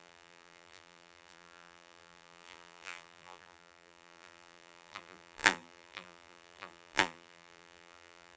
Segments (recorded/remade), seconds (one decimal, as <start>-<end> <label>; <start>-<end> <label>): 0.0-8.4 remade